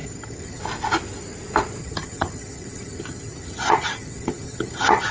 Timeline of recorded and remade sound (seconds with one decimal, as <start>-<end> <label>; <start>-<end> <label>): 0.0-0.6 remade; 0.6-1.8 recorded; 1.8-5.1 remade